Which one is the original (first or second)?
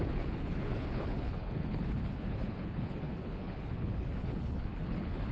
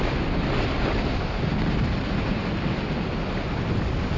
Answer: second